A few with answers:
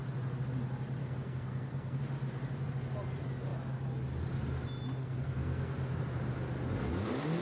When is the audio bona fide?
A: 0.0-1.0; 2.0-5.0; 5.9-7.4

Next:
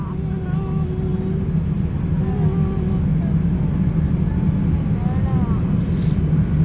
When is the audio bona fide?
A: 0.0-6.6

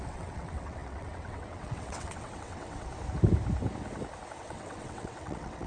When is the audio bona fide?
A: 2.9-4.4

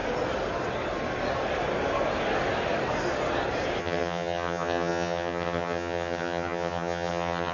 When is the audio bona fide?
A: 0.0-3.8

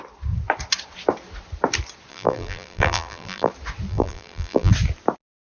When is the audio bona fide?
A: 0.0-2.1; 3.5-3.9; 4.7-5.5

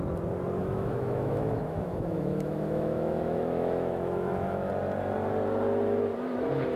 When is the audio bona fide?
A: 0.0-0.6; 4.7-6.8